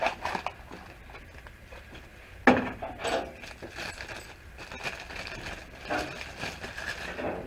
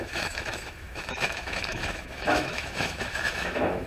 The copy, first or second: second